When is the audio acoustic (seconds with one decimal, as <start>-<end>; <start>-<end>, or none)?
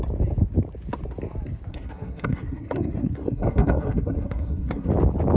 0.0-1.7; 4.9-5.4